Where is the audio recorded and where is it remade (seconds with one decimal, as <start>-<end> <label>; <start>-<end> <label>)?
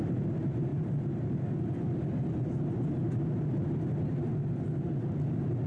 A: 0.0-5.7 recorded